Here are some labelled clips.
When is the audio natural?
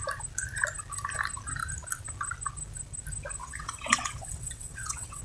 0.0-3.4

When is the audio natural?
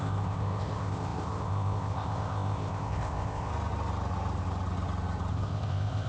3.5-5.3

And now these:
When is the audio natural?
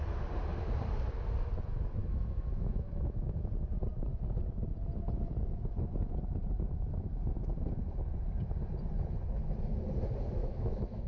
0.0-2.0; 3.5-10.4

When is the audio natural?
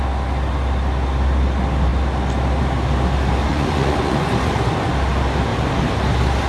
0.0-3.5; 4.9-6.5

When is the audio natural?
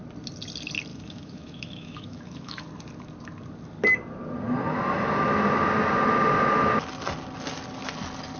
0.0-0.9; 2.7-8.4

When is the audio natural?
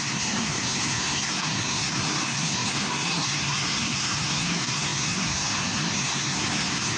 none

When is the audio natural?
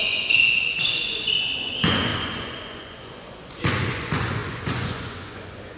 none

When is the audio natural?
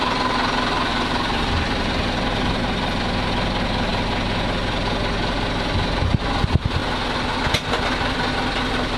0.0-0.9; 3.0-9.0